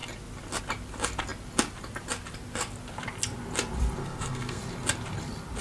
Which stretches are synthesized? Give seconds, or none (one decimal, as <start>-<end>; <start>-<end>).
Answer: 4.0-4.6